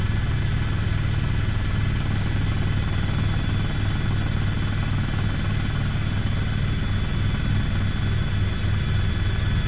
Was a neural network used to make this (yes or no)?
no